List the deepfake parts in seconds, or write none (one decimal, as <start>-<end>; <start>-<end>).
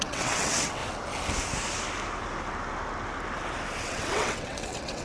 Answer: 0.0-0.8; 3.8-5.0